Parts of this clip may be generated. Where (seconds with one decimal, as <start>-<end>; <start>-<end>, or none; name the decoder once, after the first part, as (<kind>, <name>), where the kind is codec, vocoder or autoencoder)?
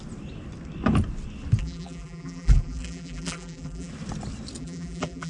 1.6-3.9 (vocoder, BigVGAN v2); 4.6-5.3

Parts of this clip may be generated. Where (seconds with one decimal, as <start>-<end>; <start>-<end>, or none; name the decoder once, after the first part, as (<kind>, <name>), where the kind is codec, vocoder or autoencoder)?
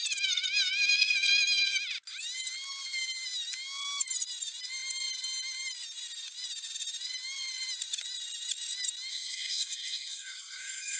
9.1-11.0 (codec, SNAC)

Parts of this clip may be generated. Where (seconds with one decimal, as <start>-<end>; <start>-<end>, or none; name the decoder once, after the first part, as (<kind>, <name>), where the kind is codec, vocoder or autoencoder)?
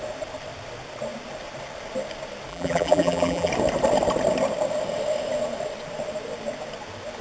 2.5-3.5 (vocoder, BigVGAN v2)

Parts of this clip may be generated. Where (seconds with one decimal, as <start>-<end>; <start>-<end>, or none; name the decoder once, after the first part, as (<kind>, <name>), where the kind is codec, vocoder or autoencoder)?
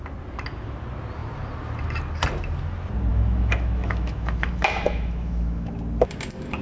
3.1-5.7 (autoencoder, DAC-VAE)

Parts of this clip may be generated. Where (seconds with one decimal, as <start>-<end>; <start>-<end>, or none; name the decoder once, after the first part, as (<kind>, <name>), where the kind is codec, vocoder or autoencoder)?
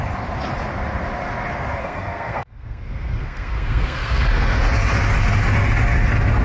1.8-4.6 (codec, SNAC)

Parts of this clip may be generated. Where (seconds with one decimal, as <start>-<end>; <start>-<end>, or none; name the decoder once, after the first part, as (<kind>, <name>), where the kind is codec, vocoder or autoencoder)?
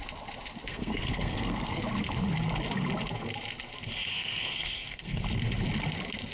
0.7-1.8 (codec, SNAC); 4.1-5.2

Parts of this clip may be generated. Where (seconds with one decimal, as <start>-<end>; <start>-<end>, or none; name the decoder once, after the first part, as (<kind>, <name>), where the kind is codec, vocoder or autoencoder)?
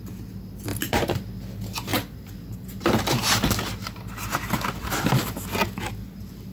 0.7-1.2 (vocoder, BigVGAN v2); 1.9-3.2